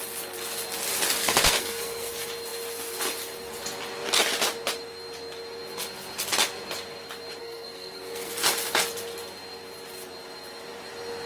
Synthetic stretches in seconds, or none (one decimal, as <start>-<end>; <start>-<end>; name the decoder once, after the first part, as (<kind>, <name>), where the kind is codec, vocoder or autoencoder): 1.2-2.1 (codec, SNAC); 7.4-8.3